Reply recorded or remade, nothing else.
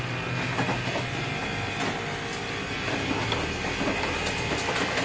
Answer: recorded